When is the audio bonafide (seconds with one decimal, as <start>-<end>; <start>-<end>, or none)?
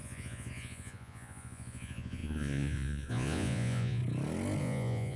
4.0-4.6